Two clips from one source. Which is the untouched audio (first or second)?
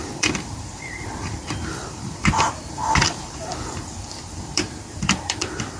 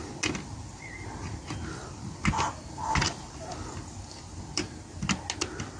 second